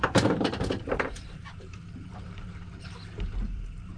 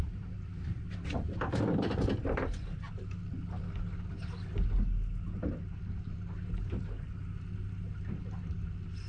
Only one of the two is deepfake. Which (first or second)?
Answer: first